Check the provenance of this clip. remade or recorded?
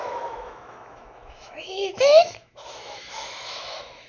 remade